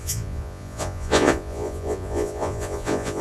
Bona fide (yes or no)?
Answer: no